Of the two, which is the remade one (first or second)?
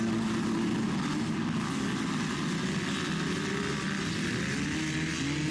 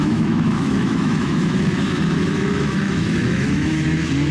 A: second